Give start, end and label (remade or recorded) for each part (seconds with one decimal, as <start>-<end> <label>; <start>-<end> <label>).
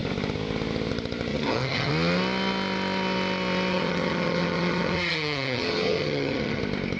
0.0-1.3 recorded; 1.3-1.9 remade; 1.9-3.7 recorded; 3.7-6.6 remade; 6.6-7.0 recorded